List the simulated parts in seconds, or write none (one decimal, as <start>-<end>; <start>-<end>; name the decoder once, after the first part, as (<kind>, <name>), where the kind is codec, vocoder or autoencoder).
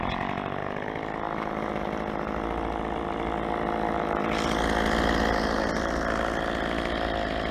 none